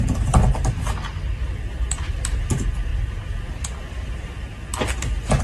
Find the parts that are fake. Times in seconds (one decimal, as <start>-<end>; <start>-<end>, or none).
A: none